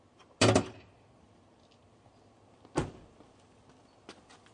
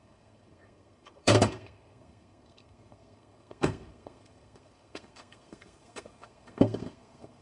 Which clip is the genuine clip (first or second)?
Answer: first